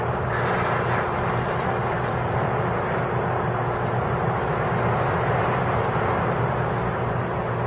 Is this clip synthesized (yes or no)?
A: no